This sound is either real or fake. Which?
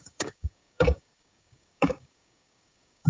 fake